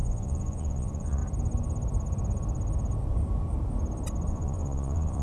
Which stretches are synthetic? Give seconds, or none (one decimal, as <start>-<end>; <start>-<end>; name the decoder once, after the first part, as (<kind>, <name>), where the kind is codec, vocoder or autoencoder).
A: 0.0-1.2 (vocoder, Vocos); 4.3-5.2